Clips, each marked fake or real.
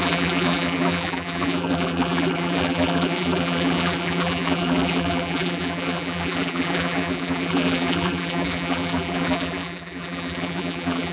fake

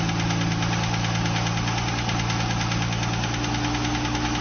real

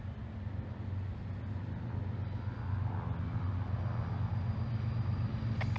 real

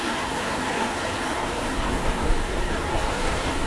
fake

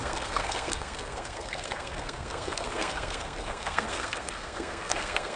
fake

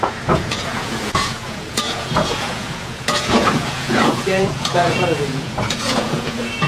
fake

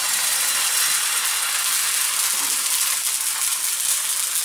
real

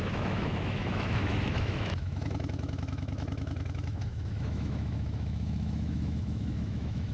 fake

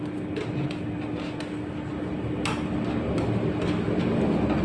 real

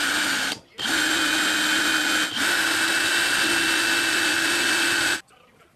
real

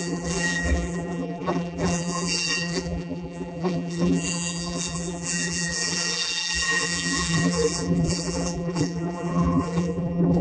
fake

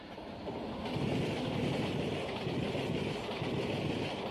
real